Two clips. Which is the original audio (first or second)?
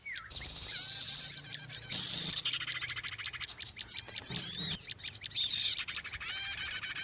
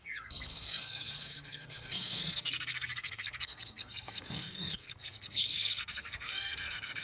first